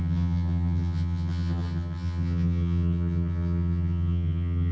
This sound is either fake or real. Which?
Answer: fake